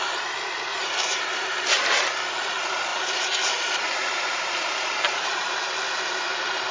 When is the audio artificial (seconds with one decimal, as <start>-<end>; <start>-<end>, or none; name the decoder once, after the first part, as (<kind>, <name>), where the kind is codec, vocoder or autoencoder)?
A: 0.7-2.0 (vocoder, BigVGAN v2); 2.9-5.6